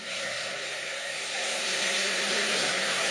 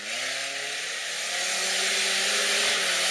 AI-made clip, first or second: first